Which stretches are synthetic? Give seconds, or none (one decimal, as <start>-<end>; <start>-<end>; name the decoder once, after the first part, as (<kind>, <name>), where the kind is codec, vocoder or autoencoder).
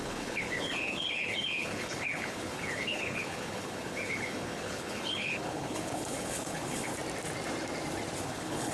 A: 0.0-6.9 (codec, HILCodec); 8.2-8.7